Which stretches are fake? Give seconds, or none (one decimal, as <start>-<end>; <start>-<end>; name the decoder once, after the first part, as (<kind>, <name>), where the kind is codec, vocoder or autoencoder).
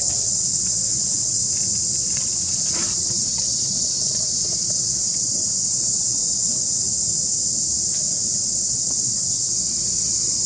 0.0-1.4 (vocoder, Vocos); 2.0-6.2; 8.4-10.5